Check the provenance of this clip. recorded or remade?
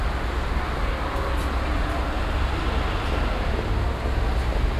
recorded